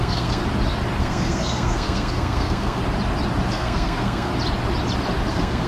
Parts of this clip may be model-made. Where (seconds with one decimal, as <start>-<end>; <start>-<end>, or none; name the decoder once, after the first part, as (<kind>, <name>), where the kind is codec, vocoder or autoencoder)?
0.0-0.4 (codec, SNAC); 1.0-2.8; 3.5-4.3; 5.3-5.7